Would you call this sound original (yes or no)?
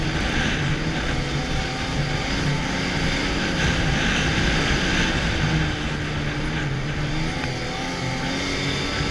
yes